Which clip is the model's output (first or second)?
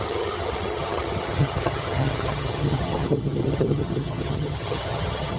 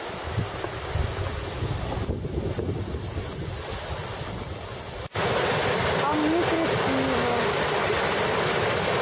first